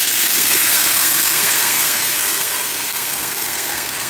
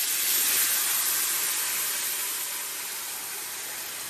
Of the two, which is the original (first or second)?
second